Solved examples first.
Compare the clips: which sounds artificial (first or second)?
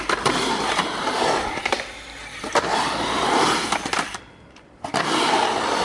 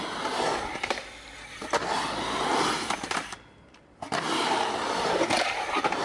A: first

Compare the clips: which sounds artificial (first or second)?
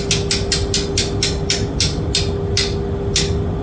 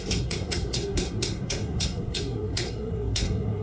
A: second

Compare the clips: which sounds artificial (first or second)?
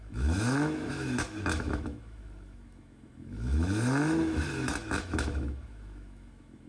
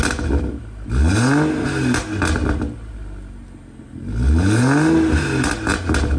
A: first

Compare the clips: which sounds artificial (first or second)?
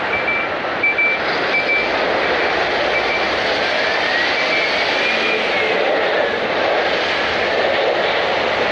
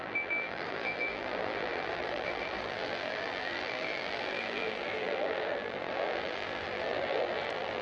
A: second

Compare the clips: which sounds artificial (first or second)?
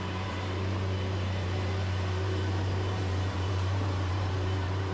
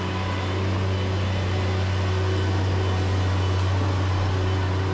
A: first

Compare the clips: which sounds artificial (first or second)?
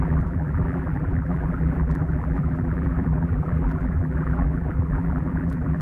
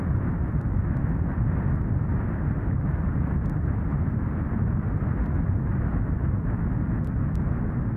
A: first